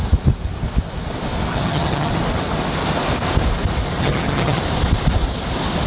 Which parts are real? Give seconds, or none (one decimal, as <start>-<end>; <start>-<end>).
0.0-1.5; 2.1-4.0; 4.6-5.9